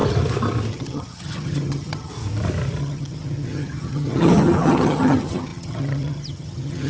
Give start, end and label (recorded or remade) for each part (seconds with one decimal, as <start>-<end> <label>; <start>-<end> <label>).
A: 0.0-0.7 recorded; 0.7-2.1 remade; 2.1-2.8 recorded; 2.8-6.9 remade